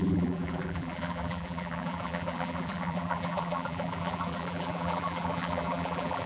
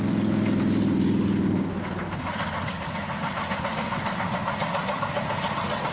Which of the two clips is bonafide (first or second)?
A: second